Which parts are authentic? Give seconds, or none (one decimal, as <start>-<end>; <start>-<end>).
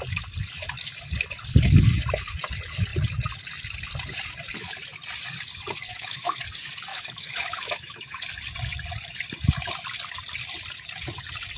0.0-5.9; 6.4-6.9; 8.2-11.6